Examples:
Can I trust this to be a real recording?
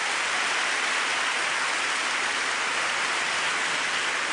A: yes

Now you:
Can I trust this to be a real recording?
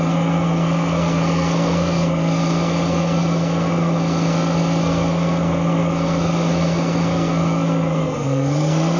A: no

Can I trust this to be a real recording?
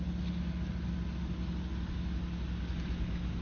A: yes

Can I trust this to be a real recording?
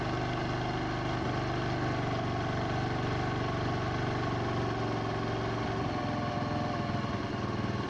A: yes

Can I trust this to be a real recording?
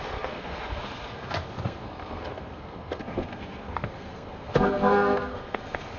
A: no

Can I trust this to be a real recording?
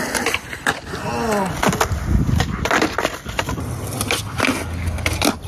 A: yes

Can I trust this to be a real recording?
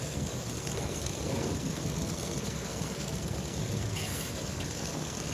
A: no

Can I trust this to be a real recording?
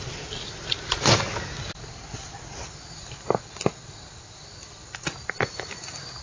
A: yes